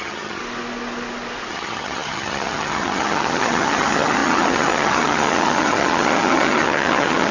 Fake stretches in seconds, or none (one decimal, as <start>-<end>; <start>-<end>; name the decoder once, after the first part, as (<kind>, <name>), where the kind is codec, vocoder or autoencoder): 0.0-0.4 (vocoder, HiFi-GAN); 1.5-7.3